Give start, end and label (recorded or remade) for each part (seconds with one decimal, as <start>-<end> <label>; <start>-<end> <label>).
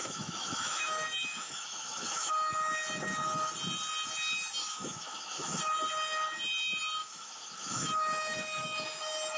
0.0-2.3 remade; 2.3-4.6 recorded; 4.6-5.6 remade; 5.6-7.0 recorded; 7.0-9.0 remade; 9.0-9.4 recorded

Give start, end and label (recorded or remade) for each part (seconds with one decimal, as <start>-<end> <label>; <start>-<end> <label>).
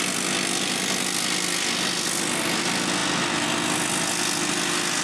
0.0-5.0 recorded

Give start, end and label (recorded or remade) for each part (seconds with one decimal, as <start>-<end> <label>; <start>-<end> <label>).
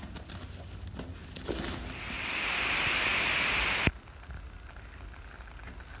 0.0-6.0 recorded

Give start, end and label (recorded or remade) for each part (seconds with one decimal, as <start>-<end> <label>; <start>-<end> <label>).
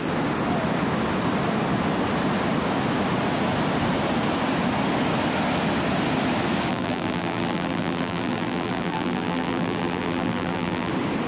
0.0-6.7 recorded; 6.7-10.9 remade; 10.9-11.3 recorded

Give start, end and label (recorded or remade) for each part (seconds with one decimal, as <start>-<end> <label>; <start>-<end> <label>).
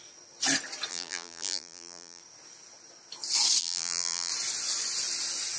0.0-0.9 recorded; 0.9-2.2 remade; 2.2-3.6 recorded; 3.6-4.3 remade; 4.3-5.6 recorded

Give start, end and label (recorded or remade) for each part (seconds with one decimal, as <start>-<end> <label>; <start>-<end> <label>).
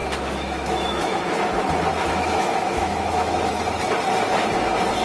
0.0-1.2 remade; 1.2-1.9 recorded; 1.9-3.5 remade; 3.5-5.0 recorded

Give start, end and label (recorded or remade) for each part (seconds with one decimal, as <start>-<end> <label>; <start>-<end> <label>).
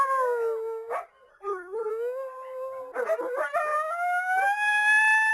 0.0-1.3 recorded; 1.3-1.9 remade; 1.9-5.3 recorded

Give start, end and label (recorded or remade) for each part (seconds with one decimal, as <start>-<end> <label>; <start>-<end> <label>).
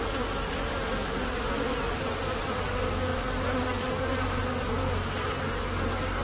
0.0-6.2 recorded